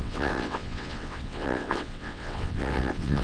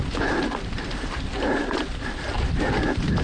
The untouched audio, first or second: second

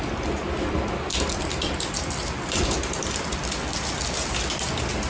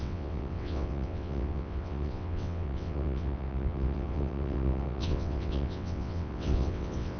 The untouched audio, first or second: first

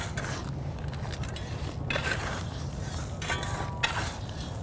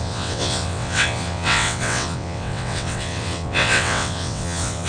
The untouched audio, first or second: first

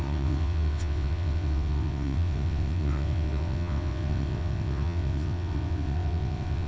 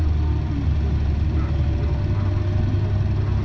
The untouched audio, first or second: second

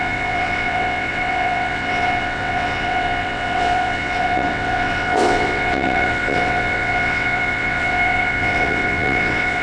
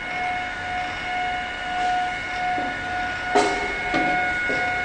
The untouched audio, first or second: second